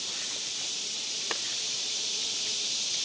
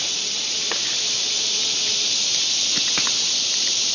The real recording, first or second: second